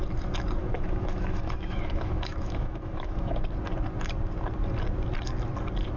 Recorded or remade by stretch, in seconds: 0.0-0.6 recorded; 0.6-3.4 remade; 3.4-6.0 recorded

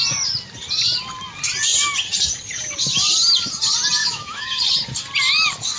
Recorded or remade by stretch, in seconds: 0.0-4.0 recorded; 4.0-4.6 remade; 4.6-5.8 recorded